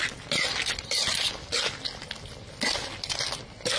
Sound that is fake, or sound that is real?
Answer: real